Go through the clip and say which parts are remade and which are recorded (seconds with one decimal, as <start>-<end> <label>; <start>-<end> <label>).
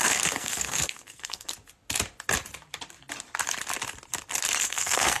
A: 0.0-1.5 remade; 1.5-4.6 recorded; 4.6-5.2 remade